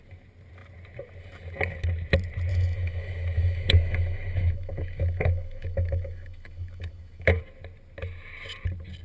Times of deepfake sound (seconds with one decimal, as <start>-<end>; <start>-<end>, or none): 2.5-7.4